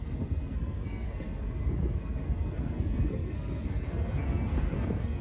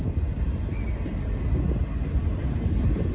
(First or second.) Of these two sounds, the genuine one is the second